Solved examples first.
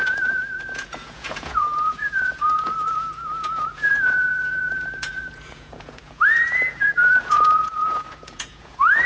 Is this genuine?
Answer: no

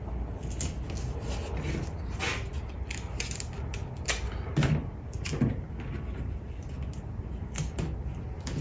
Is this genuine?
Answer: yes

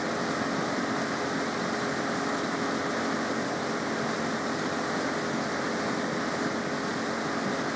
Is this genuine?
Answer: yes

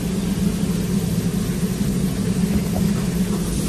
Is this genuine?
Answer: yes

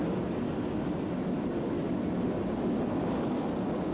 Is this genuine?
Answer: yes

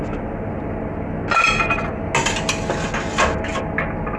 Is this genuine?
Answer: yes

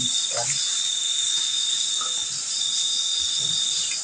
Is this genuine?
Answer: yes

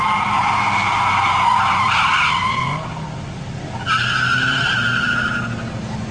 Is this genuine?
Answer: yes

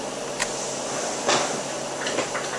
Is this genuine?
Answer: yes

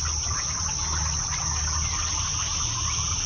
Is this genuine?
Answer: yes